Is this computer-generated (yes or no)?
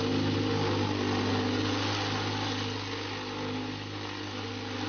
no